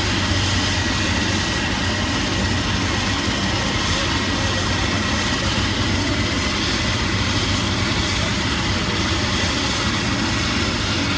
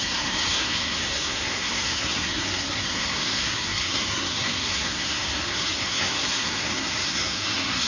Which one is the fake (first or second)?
second